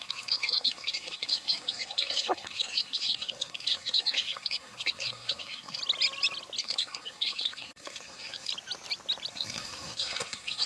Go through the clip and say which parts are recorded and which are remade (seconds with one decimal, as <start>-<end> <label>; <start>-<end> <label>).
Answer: 0.0-5.8 remade; 5.8-6.6 recorded; 6.6-8.5 remade; 8.5-9.3 recorded; 9.3-10.7 remade